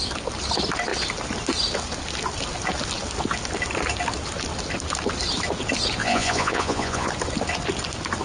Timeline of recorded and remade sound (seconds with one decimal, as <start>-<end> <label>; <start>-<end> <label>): 0.0-6.0 recorded; 6.0-7.1 remade; 7.1-8.2 recorded